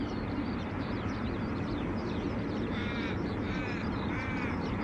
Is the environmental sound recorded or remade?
remade